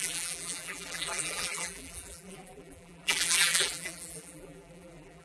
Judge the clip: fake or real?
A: fake